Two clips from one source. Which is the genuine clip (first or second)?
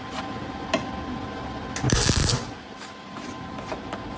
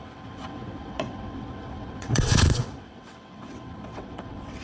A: first